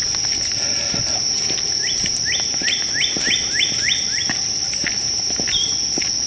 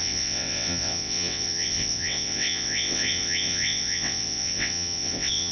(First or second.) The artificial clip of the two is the second